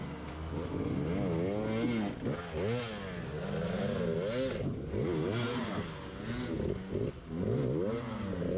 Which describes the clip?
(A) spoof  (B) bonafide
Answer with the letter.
B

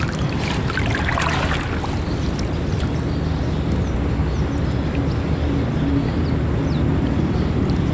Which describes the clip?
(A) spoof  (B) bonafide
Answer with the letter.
B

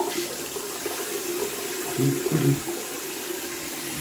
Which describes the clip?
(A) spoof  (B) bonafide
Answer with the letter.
B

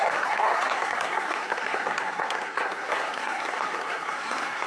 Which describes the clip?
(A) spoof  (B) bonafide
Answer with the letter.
A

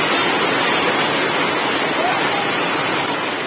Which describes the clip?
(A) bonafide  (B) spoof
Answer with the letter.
A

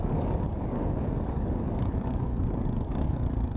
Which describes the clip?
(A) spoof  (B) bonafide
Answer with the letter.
A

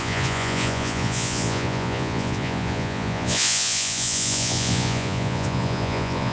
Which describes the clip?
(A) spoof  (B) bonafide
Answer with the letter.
A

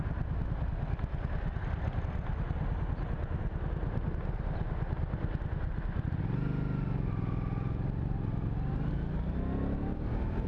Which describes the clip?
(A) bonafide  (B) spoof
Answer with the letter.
A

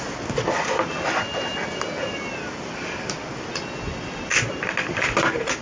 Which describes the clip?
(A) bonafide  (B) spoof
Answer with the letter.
A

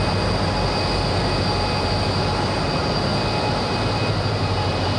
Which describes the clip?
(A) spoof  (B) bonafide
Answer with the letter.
B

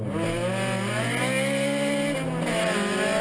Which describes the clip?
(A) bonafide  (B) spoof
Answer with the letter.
A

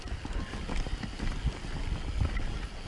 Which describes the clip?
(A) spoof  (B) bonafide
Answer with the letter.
B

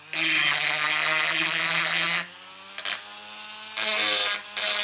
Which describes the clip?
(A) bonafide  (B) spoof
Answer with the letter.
A